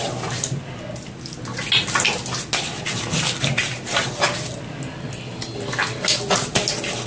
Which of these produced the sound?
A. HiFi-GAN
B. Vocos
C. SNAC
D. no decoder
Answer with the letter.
D